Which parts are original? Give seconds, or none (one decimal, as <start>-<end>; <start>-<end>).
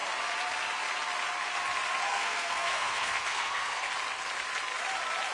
0.0-2.1; 3.9-5.3